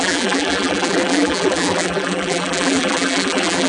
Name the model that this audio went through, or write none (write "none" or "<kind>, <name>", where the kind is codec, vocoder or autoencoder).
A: vocoder, BigVGAN v2